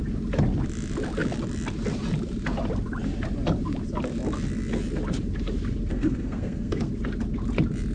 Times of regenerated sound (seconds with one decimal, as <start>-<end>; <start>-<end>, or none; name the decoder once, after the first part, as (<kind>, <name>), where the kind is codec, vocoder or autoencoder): 5.9-6.9 (codec, SNAC)